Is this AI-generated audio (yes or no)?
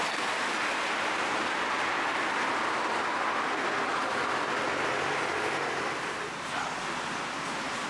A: no